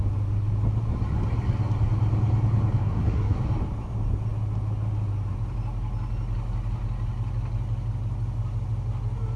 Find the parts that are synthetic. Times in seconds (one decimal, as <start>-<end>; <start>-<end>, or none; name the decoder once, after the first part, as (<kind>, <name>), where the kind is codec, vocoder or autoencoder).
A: 2.8-3.4 (codec, SNAC)